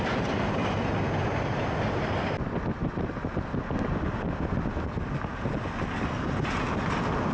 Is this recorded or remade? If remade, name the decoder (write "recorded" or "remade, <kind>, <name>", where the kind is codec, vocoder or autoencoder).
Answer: recorded